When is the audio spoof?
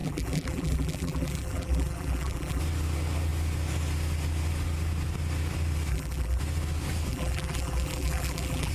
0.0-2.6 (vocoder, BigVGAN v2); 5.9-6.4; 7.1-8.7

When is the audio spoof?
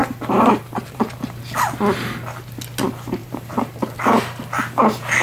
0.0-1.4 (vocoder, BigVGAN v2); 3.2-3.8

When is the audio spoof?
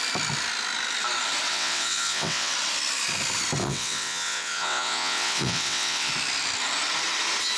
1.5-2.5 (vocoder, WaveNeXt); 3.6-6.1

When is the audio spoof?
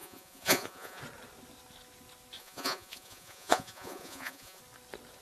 0.0-1.0 (vocoder, Vocos); 2.4-4.6